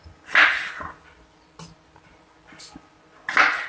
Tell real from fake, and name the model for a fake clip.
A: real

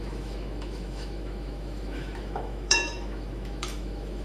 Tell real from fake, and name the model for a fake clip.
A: fake, autoencoder, DAC-VAE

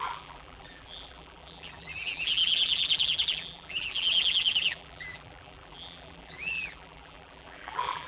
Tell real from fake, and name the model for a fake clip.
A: fake, vocoder, BigVGAN v2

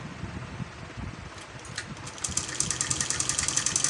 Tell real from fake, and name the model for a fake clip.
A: real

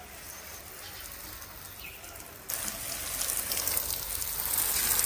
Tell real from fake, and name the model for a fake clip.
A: real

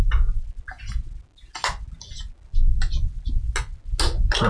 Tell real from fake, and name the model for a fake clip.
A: real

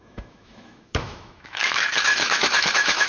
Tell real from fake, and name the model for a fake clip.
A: fake, autoencoder, DAC-VAE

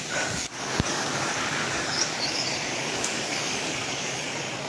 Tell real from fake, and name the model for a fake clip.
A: fake, codec, DAC